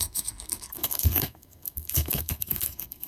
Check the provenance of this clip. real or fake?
fake